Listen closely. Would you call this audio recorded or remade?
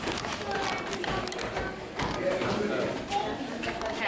recorded